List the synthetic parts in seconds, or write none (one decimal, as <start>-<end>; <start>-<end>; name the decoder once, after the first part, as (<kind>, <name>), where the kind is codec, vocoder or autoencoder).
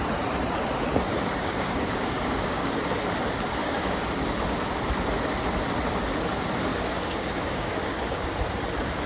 1.4-2.8 (codec, DAC); 3.6-4.2; 6.7-8.3